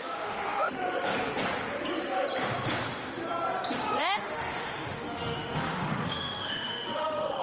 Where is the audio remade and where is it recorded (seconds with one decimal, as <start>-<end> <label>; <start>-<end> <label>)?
0.0-1.0 remade; 1.0-4.0 recorded; 4.0-7.4 remade